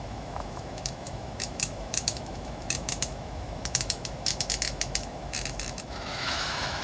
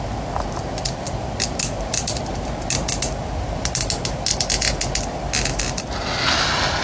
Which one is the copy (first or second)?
first